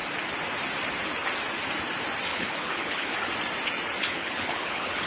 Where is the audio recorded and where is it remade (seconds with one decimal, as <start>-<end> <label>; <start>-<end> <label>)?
0.0-2.3 recorded; 2.3-3.3 remade; 3.3-4.0 recorded; 4.0-5.1 remade